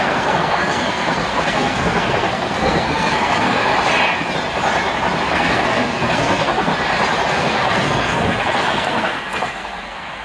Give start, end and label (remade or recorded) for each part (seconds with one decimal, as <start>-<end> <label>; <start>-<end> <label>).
0.0-3.7 remade; 3.7-5.3 recorded; 5.3-6.7 remade; 6.7-7.3 recorded; 7.3-10.2 remade